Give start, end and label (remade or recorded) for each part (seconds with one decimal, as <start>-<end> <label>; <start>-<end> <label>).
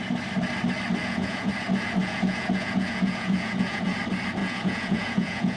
0.0-1.0 recorded; 1.0-1.5 remade; 1.5-2.0 recorded; 2.0-4.0 remade; 4.0-4.4 recorded; 4.4-5.6 remade